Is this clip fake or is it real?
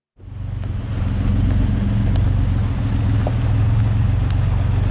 real